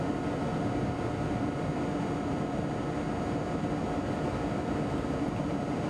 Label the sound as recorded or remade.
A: recorded